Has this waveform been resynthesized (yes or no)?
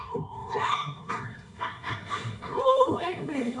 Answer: yes